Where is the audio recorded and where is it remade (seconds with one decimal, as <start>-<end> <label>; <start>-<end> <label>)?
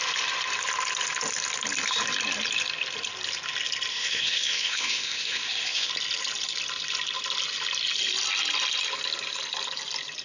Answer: 0.0-3.9 recorded; 3.9-5.9 remade; 5.9-10.2 recorded